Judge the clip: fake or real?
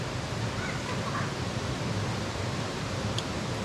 real